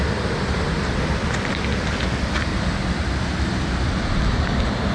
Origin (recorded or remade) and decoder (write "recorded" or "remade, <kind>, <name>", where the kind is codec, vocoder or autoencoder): recorded